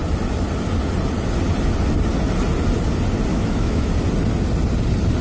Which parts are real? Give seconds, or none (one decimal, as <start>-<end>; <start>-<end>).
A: 0.0-3.3; 3.9-5.2